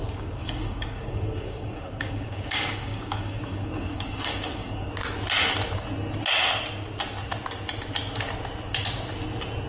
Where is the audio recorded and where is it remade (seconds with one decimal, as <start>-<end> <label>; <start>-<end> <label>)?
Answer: 0.0-4.9 remade; 4.9-9.7 recorded